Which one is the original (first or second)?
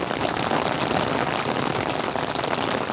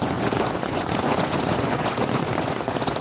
first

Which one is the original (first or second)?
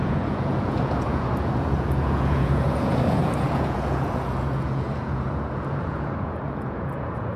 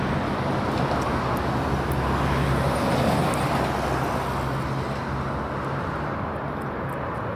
second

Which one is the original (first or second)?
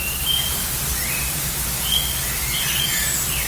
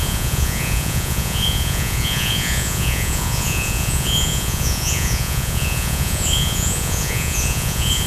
first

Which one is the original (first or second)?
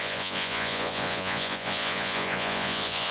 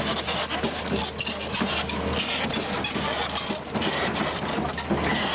second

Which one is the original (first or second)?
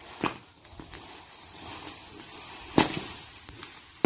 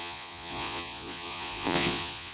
first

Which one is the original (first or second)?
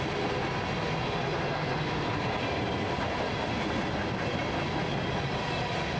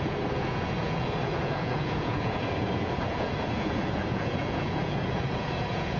first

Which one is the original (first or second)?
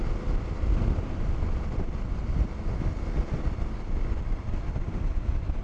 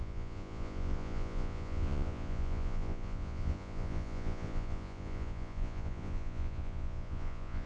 first